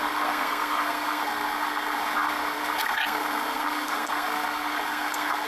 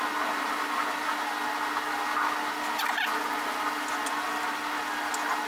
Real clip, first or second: second